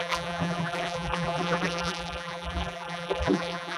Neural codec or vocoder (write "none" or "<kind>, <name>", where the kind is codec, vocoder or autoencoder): vocoder, BigVGAN v2